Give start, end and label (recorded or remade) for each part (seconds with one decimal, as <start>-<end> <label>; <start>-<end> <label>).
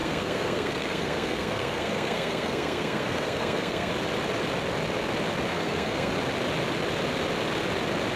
0.0-3.9 remade; 3.9-5.5 recorded; 5.5-6.1 remade; 6.1-8.2 recorded